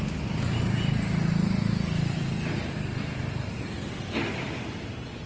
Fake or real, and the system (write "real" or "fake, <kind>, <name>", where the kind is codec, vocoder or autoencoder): real